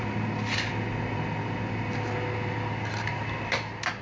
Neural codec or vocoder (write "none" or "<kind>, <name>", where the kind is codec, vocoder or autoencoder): none